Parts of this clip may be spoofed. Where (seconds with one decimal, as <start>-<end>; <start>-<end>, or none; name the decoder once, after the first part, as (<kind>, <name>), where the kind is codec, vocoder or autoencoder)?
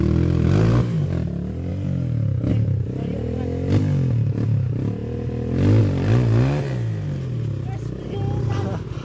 none